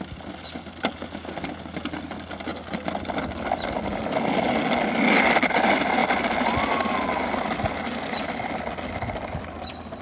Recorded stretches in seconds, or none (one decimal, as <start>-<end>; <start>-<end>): 0.0-10.0